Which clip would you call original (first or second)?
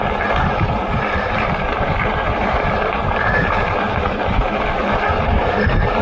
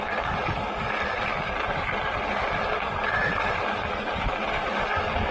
second